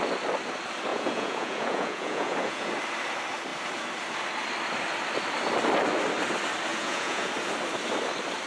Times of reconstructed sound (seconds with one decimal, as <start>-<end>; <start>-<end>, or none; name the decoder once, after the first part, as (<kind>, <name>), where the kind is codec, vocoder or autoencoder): 0.9-2.7 (vocoder, Vocos); 6.7-7.3